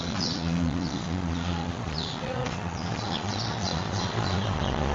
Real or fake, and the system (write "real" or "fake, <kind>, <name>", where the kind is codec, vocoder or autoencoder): fake, vocoder, Vocos